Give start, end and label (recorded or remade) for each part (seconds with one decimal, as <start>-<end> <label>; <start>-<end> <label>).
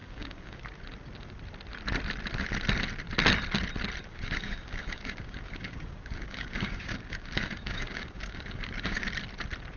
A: 0.0-0.6 remade; 0.6-4.1 recorded; 4.1-9.1 remade; 9.1-9.8 recorded